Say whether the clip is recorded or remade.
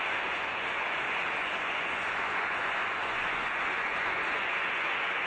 remade